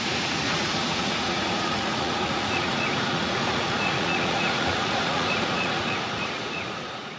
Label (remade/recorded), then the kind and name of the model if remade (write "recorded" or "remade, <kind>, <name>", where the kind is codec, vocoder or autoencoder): remade, vocoder, Vocos